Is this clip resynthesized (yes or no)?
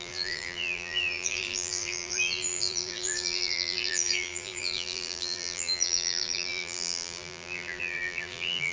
yes